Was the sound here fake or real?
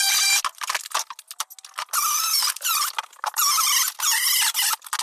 real